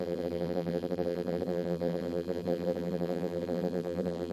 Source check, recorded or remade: remade